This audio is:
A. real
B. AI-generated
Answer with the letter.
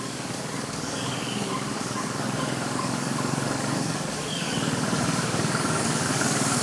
B